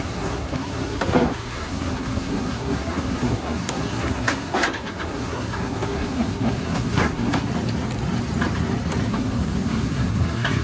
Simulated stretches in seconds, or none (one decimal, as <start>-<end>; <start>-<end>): 0.0-7.5; 9.1-10.6